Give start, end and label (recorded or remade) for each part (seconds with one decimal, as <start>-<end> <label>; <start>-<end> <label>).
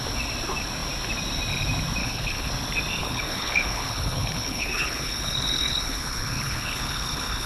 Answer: 0.0-2.0 recorded; 2.0-2.5 remade; 2.5-3.0 recorded; 3.0-7.5 remade